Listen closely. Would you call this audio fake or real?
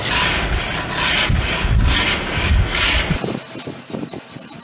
real